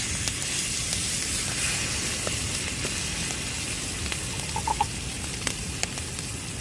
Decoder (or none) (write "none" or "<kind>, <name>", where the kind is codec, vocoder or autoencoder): none